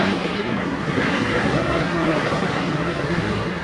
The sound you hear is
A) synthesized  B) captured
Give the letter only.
A